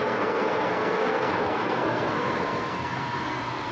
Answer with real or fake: fake